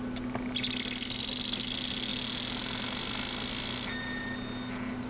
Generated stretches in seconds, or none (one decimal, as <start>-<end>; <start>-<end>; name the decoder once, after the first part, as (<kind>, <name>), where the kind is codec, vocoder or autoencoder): none